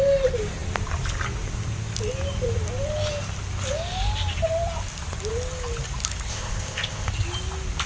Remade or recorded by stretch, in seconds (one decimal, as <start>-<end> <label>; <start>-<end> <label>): 0.0-6.3 recorded; 6.3-7.1 remade; 7.1-7.9 recorded